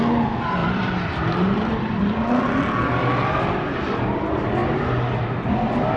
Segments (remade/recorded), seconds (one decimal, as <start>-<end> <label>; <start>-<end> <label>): 0.0-0.6 recorded; 0.6-2.3 remade; 2.3-6.0 recorded